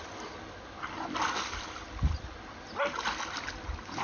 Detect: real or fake real